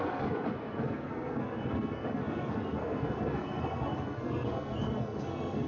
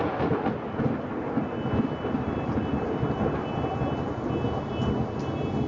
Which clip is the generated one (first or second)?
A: first